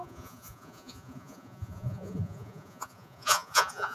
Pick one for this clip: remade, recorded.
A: remade